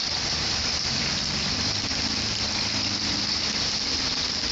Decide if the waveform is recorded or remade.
recorded